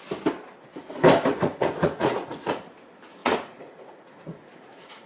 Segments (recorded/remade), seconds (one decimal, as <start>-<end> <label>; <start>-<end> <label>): 0.0-1.3 recorded; 1.3-2.6 remade; 2.6-3.2 recorded; 3.2-5.1 remade